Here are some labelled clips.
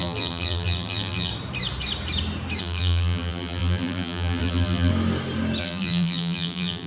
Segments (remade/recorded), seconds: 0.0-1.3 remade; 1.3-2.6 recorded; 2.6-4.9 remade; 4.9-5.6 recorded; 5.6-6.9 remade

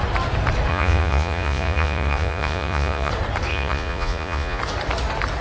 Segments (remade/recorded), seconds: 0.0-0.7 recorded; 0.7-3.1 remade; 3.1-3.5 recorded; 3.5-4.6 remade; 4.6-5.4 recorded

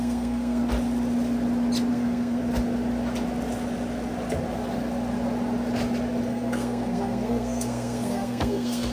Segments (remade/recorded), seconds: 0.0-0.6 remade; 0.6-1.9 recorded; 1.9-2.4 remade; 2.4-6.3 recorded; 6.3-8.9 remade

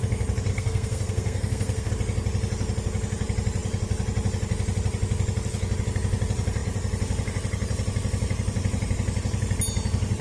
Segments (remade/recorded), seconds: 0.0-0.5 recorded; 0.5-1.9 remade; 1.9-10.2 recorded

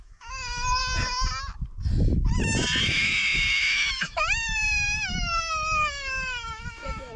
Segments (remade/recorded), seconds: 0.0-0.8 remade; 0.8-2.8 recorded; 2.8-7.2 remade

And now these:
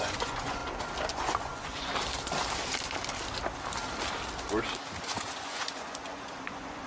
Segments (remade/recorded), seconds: 0.0-0.6 remade; 0.6-1.1 recorded; 1.1-1.9 remade; 1.9-5.0 recorded; 5.0-6.9 remade

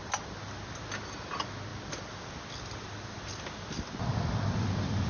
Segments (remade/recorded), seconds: 0.0-5.1 recorded

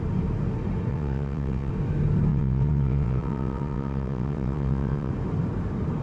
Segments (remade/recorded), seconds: 0.0-0.9 recorded; 0.9-1.7 remade; 1.7-2.3 recorded; 2.3-5.1 remade; 5.1-6.0 recorded